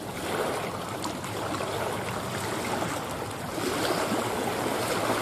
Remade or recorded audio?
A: recorded